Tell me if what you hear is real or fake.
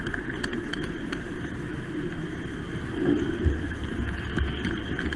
real